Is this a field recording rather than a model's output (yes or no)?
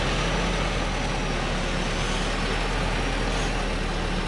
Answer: yes